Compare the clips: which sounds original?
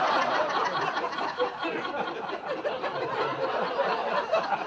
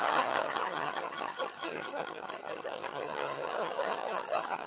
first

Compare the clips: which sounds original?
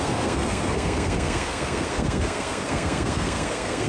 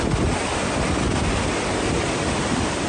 second